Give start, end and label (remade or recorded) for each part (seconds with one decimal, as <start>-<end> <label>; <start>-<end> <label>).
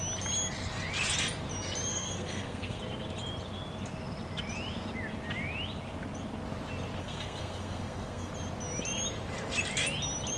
0.0-1.9 recorded; 1.9-2.8 remade; 2.8-7.0 recorded; 7.0-8.3 remade; 8.3-10.4 recorded